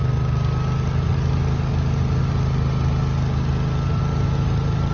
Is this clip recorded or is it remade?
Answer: recorded